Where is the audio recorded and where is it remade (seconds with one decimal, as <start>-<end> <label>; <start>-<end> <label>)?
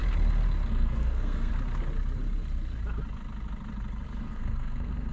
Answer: 0.0-0.7 recorded; 0.7-1.5 remade; 1.5-4.2 recorded; 4.2-5.1 remade